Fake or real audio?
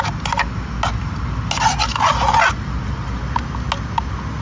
real